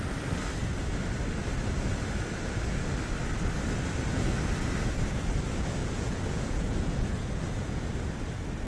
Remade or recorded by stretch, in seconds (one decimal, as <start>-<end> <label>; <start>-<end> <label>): 0.0-5.8 recorded; 5.8-7.9 remade; 7.9-8.7 recorded